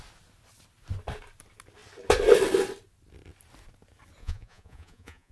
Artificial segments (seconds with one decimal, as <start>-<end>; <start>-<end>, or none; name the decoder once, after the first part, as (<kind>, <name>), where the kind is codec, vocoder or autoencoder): 4.2-5.3 (vocoder, Vocos)